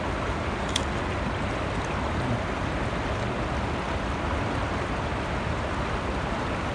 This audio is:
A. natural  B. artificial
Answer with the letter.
A